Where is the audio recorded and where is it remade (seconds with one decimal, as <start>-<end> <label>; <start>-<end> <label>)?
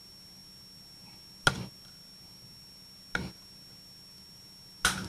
0.0-5.1 recorded